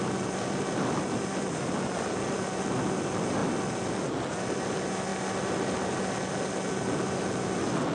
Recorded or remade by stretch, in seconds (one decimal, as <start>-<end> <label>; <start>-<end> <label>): 0.0-7.9 recorded